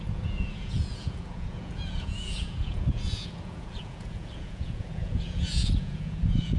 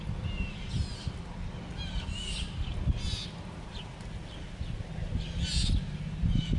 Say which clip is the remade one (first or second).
first